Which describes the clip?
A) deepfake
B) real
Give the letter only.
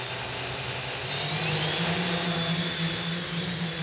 B